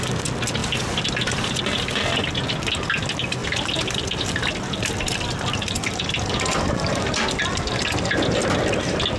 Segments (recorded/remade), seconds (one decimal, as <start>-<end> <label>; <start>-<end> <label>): 0.0-0.6 recorded; 0.6-1.6 remade; 1.6-3.4 recorded; 3.4-8.1 remade; 8.1-9.2 recorded